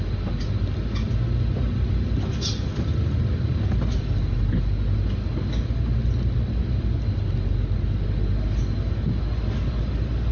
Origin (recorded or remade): recorded